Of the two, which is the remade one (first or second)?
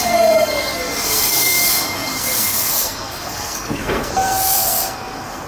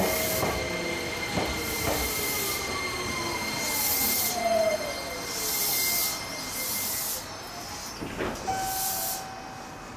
first